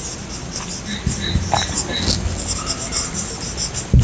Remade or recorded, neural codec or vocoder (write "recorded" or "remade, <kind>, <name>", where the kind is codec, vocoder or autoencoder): recorded